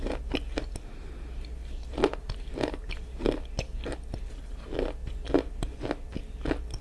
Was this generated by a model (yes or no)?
no